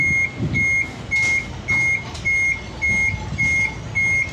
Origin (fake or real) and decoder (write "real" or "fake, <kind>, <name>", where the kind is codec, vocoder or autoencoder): real